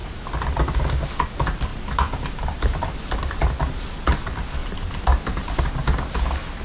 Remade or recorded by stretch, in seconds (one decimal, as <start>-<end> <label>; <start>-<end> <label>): 0.0-0.8 remade; 0.8-1.7 recorded; 1.7-4.1 remade; 4.1-4.6 recorded; 4.6-5.6 remade; 5.6-6.6 recorded